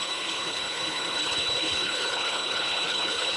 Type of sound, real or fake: fake